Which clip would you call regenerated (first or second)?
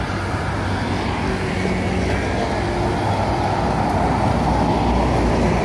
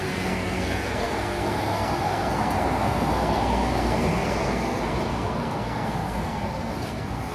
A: second